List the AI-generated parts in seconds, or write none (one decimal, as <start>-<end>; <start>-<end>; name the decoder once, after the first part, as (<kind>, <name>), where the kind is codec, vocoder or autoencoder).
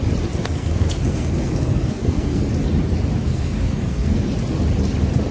0.4-2.5 (codec, SNAC); 3.2-4.2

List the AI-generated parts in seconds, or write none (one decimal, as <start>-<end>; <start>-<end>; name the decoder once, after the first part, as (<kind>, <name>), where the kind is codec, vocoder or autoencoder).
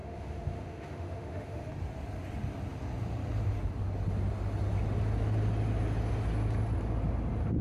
0.0-1.7 (autoencoder, DAC-VAE)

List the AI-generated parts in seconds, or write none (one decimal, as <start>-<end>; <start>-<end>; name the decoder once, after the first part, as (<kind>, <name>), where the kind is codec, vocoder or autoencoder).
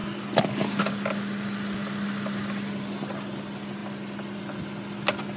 none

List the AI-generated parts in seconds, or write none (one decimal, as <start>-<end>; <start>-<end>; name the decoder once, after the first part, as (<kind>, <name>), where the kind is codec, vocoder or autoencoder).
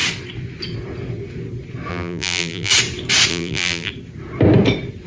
1.9-2.7 (vocoder, BigVGAN v2); 3.3-3.9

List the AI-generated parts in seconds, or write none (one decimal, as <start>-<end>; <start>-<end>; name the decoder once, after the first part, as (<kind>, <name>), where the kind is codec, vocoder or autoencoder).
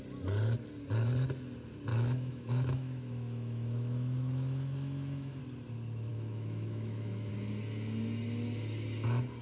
1.9-5.4 (autoencoder, DAC-VAE); 6.1-7.3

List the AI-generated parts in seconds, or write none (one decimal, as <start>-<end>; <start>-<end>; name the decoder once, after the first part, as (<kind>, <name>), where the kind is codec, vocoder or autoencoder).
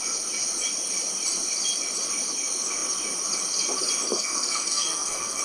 4.1-5.4 (codec, SNAC)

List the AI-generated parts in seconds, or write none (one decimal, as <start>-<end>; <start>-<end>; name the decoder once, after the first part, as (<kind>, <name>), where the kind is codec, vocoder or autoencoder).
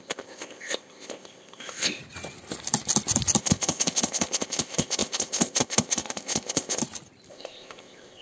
0.0-2.0 (codec, ZipCodec); 3.4-6.8; 7.3-8.2